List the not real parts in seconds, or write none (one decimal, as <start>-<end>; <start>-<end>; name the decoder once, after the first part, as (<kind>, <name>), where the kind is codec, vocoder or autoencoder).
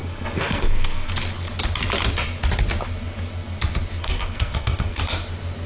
0.0-1.1 (codec, SNAC); 4.0-5.0